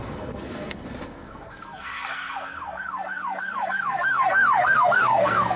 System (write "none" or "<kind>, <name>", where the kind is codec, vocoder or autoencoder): codec, SNAC